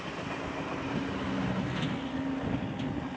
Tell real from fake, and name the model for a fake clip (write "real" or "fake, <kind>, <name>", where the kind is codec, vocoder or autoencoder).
real